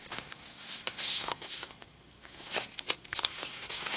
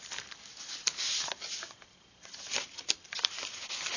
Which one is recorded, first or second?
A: second